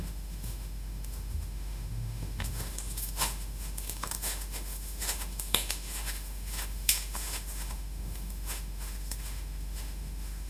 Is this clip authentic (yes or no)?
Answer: no